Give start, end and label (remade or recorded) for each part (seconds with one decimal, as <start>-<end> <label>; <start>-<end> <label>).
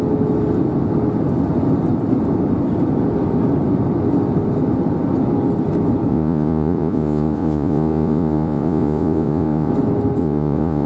0.0-6.1 recorded; 6.1-9.7 remade; 9.7-10.2 recorded; 10.2-10.9 remade